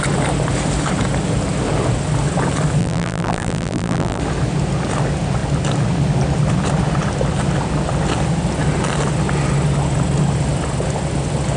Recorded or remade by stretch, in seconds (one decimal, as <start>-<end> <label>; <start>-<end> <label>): 0.0-2.8 recorded; 2.8-4.2 remade; 4.2-11.6 recorded